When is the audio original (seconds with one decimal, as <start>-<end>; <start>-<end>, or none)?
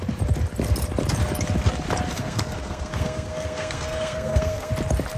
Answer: 0.0-2.1; 4.7-5.2